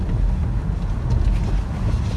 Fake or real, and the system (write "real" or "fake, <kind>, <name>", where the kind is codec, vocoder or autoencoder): real